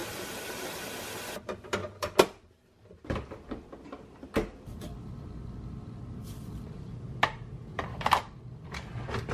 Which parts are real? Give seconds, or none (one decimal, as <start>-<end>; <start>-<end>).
1.1-7.7; 8.4-9.3